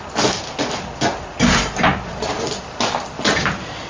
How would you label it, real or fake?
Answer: real